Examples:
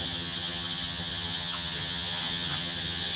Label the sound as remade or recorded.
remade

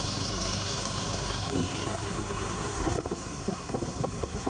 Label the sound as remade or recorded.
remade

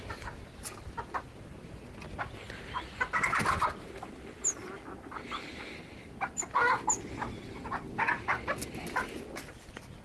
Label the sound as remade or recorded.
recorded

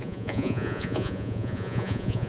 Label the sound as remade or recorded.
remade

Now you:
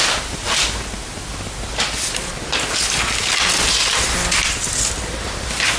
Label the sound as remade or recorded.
recorded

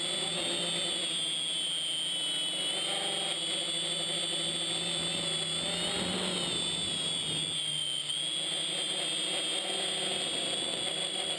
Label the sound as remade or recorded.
recorded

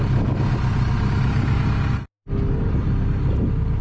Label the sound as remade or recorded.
recorded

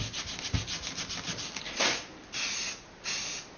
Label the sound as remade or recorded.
recorded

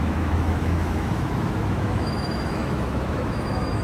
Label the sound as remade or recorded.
remade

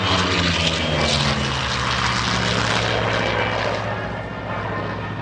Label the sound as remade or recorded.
recorded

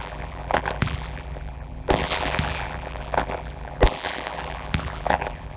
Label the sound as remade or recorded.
remade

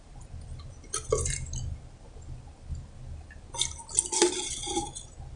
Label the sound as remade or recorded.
recorded